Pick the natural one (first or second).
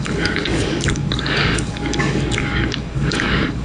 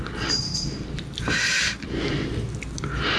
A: second